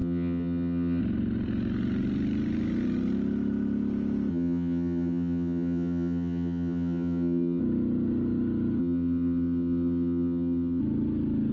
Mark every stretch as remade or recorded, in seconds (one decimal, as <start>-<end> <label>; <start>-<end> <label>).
0.0-1.0 remade; 1.0-4.3 recorded; 4.3-7.6 remade; 7.6-8.8 recorded; 8.8-10.8 remade; 10.8-11.5 recorded